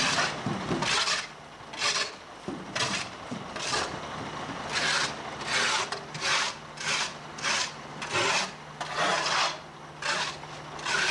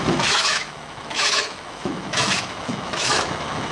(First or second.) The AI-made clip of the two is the second